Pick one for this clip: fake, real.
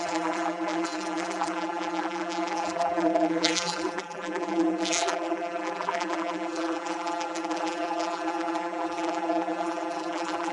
fake